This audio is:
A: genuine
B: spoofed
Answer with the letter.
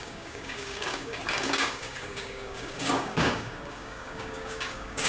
B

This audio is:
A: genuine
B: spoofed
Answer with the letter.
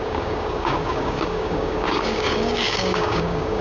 B